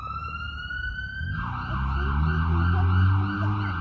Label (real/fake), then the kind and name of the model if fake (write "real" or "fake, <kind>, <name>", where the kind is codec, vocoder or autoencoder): real